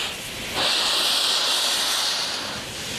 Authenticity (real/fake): real